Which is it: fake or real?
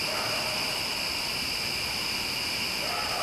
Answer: real